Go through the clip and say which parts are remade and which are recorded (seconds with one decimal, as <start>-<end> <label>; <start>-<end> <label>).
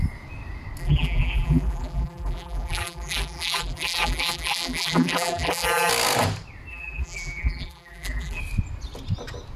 0.0-0.8 recorded; 0.8-5.9 remade; 5.9-6.7 recorded; 6.7-8.4 remade; 8.4-9.6 recorded